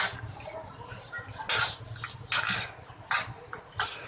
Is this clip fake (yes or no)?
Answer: no